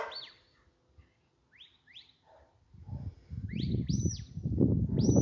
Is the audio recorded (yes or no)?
yes